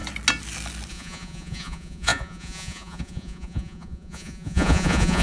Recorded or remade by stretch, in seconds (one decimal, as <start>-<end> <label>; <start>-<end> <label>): 0.0-0.9 recorded; 0.9-5.2 remade